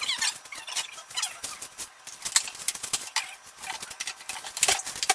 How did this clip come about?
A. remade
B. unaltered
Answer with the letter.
B